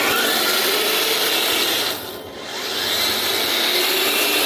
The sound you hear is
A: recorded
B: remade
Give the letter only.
A